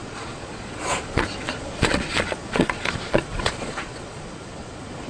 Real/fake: fake